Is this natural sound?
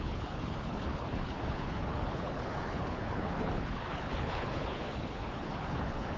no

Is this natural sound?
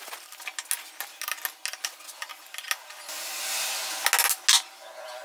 yes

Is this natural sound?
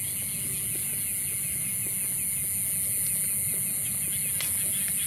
yes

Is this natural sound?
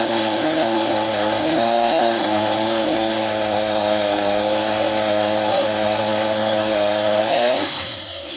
no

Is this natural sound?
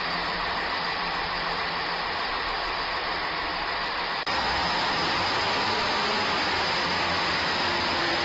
no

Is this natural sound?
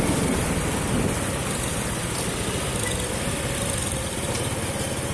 yes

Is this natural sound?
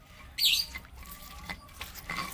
yes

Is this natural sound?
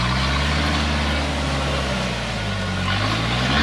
yes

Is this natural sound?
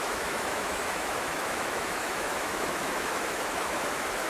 no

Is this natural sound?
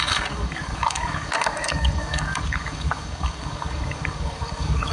no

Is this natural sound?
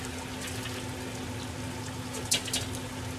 yes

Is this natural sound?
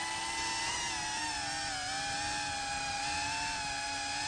yes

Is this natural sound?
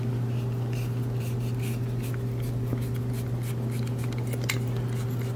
yes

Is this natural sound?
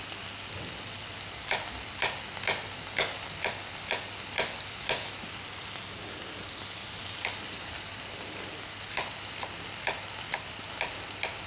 yes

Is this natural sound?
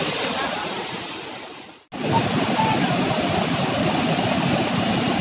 yes